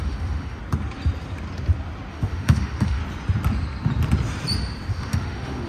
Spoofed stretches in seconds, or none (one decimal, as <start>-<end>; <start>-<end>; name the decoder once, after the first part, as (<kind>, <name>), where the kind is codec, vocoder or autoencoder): 0.0-0.6 (autoencoder, DAC-VAE); 2.1-3.0; 4.9-5.7